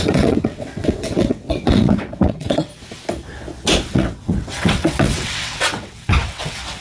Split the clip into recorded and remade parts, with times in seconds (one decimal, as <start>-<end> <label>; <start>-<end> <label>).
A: 0.0-2.7 remade; 2.7-3.9 recorded; 3.9-6.8 remade